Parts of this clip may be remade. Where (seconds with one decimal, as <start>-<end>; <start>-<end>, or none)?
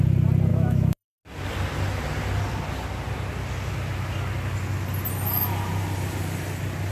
0.5-1.2